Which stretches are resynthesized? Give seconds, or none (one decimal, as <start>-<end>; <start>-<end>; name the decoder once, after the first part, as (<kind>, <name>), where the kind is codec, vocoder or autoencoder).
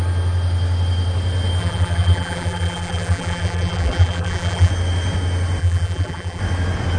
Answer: 1.6-4.7 (vocoder, BigVGAN v2); 5.6-6.4